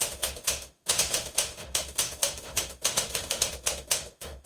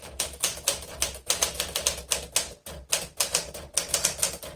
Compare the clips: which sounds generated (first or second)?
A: first